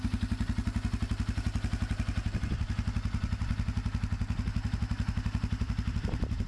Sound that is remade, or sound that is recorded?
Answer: recorded